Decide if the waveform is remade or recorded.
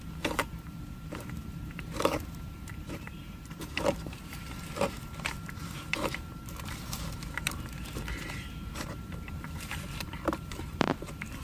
remade